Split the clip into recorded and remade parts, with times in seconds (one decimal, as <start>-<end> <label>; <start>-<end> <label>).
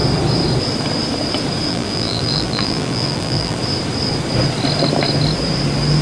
0.0-1.7 recorded; 1.7-3.6 remade; 3.6-6.0 recorded